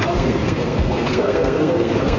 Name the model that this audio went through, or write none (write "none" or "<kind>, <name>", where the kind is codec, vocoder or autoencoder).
codec, SNAC